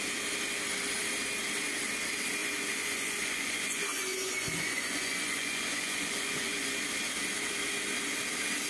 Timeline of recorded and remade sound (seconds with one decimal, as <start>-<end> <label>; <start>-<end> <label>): 0.0-2.4 recorded; 2.4-6.8 remade; 6.8-8.7 recorded